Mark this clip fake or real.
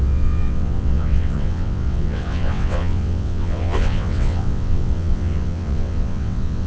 fake